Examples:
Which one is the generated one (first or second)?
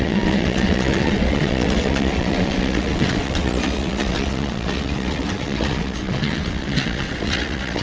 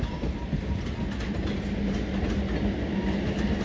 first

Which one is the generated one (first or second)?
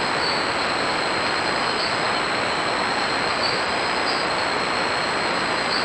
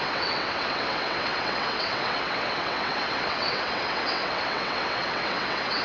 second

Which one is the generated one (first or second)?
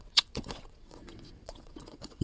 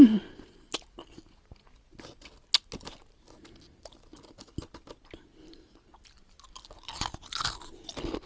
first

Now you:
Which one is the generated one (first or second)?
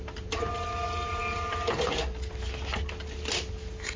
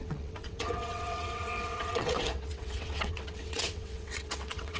second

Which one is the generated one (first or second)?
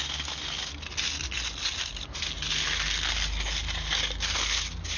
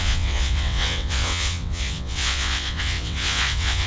second